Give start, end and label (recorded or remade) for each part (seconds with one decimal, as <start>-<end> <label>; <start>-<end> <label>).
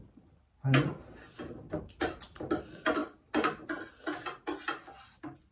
0.0-5.5 recorded